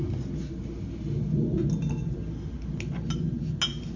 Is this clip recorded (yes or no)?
yes